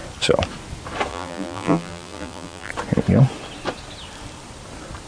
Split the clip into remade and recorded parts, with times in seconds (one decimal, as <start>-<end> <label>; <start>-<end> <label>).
0.0-1.1 recorded; 1.1-2.7 remade; 2.7-5.1 recorded